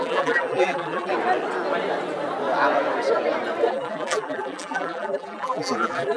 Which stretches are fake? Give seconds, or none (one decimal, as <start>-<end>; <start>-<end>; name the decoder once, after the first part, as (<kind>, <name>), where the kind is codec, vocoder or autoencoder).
0.0-1.1 (vocoder, BigVGAN v2); 3.7-6.2

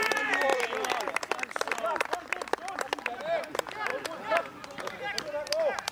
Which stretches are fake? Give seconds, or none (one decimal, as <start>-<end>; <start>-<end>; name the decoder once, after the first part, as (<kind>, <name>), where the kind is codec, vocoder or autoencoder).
none

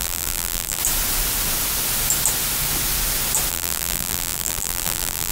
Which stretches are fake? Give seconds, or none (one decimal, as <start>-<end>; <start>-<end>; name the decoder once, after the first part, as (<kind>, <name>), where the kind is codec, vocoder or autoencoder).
0.0-0.8 (vocoder, BigVGAN v2); 3.5-5.3

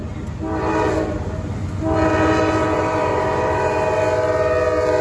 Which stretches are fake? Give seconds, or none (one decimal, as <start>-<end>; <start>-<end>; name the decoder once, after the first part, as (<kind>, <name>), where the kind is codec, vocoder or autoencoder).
3.0-4.0 (vocoder, BigVGAN v2)